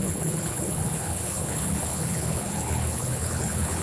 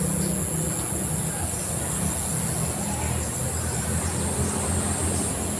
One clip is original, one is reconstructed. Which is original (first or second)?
second